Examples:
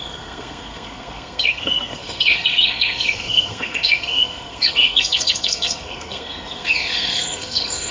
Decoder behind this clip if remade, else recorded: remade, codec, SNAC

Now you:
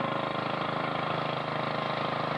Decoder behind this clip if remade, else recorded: recorded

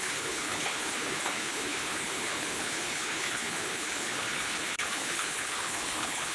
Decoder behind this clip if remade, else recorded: remade, codec, HILCodec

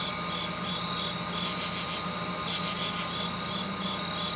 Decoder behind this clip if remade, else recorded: recorded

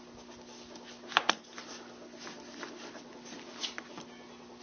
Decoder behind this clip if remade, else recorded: recorded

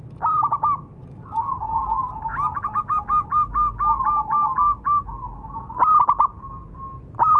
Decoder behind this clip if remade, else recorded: recorded